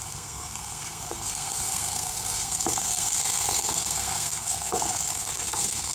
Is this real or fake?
fake